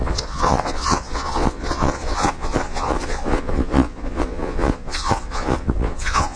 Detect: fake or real fake